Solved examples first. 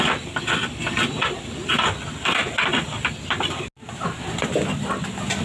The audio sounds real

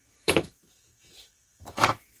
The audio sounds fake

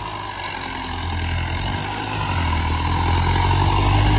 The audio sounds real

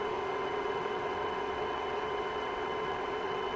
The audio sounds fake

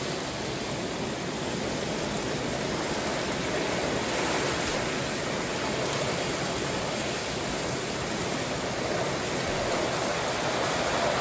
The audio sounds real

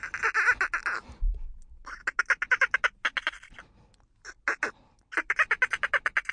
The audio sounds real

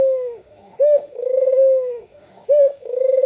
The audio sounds fake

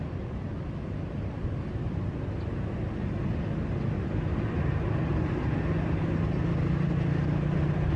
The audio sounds real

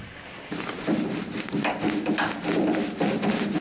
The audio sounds real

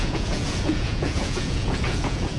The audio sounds fake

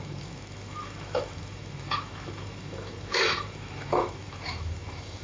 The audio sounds fake